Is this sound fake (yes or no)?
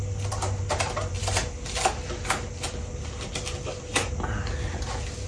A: no